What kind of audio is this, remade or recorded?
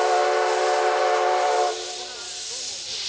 recorded